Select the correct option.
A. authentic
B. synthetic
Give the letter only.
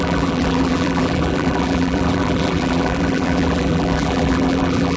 B